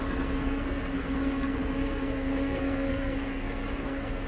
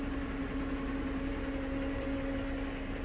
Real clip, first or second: second